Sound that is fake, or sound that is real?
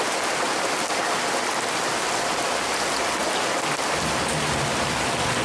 real